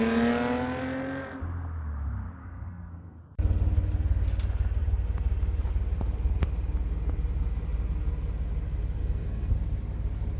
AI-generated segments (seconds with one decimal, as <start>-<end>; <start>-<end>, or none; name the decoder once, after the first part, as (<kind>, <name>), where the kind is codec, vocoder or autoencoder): 2.4-3.2 (codec, SNAC); 9.0-9.5